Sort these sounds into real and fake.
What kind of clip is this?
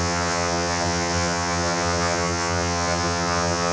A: fake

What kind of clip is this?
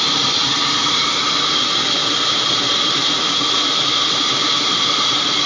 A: real